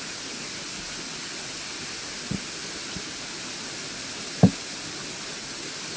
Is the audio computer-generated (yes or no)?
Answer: no